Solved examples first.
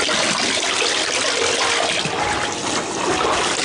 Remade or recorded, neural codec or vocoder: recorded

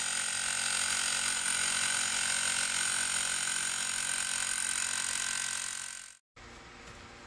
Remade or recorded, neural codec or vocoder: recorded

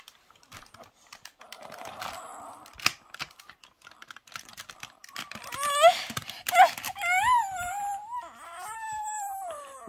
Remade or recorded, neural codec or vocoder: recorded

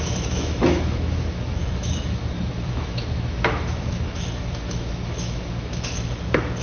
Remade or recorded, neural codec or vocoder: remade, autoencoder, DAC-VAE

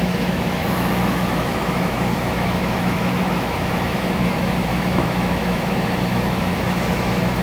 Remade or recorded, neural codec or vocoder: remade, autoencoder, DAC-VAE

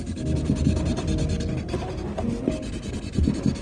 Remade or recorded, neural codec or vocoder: recorded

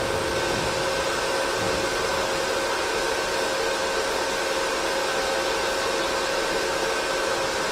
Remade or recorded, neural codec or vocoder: recorded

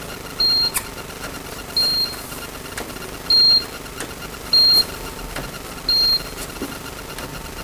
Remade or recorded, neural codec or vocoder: recorded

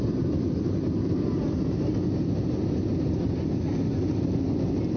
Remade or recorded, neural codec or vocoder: recorded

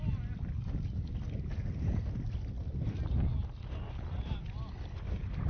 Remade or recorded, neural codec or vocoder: recorded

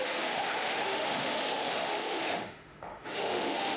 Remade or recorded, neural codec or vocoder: remade, autoencoder, DAC-VAE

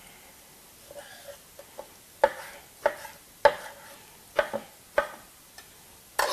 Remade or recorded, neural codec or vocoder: recorded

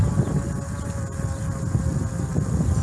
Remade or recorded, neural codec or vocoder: recorded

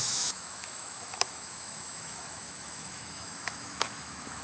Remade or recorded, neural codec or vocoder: remade, autoencoder, DAC-VAE